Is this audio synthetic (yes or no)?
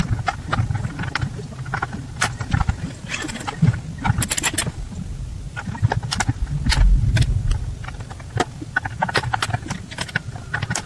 no